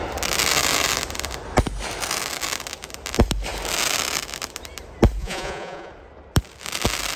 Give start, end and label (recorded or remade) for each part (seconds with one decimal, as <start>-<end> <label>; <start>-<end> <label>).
0.0-5.2 recorded; 5.2-5.9 remade; 5.9-7.2 recorded